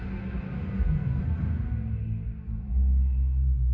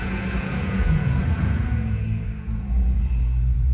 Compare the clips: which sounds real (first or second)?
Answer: first